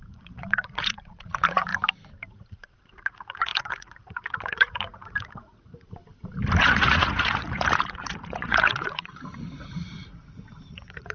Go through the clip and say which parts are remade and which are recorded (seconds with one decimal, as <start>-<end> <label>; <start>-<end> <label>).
0.0-1.7 remade; 1.7-2.3 recorded; 2.3-5.7 remade; 5.7-6.6 recorded; 6.6-11.1 remade